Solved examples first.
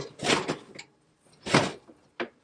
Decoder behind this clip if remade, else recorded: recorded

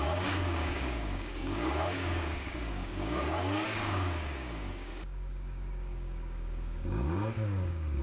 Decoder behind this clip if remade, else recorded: remade, codec, DAC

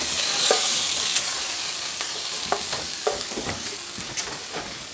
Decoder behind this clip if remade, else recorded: remade, codec, DAC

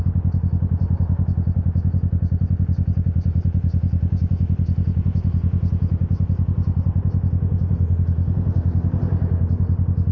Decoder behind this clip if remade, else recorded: recorded